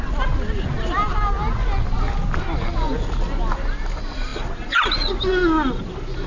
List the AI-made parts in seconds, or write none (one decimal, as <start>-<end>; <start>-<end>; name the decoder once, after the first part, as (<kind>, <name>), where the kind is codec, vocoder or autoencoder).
none